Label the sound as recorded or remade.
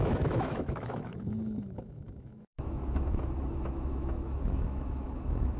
remade